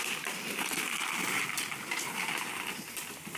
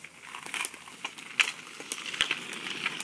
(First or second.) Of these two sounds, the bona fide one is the second